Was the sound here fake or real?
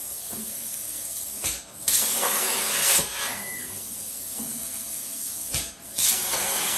fake